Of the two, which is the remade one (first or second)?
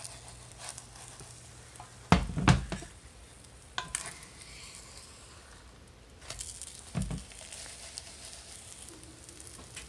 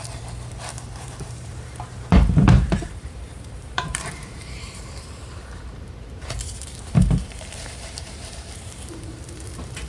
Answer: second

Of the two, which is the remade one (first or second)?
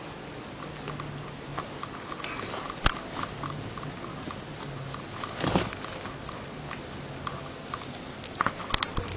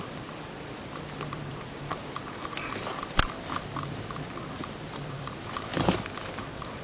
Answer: second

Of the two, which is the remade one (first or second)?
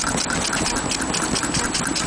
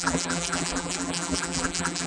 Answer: second